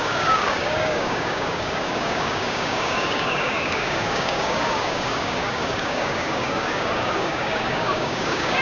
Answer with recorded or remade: remade